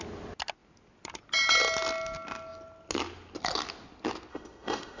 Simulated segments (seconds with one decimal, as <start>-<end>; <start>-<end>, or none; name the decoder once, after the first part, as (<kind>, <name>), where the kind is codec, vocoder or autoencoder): 4.3-5.0 (autoencoder, DAC-VAE)